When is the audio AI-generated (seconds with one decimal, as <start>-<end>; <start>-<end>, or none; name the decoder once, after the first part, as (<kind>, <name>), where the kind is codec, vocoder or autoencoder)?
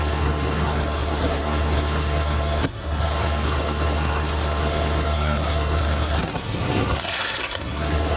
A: 0.0-8.2 (codec, SNAC)